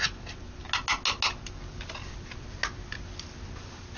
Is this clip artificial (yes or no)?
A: no